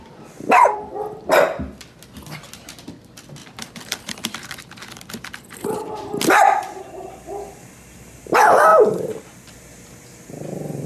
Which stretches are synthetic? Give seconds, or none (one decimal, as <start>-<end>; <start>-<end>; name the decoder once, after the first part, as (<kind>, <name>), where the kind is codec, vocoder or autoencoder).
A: 3.4-6.8 (vocoder, BigVGAN v2); 8.7-9.5